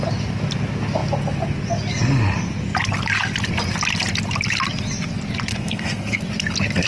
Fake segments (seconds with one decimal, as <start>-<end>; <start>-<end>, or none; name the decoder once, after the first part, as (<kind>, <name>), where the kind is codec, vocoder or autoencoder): 5.5-6.2 (codec, SNAC)